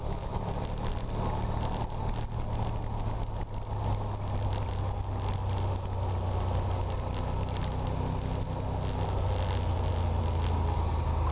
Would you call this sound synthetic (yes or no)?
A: no